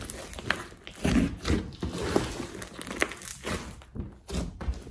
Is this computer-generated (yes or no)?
no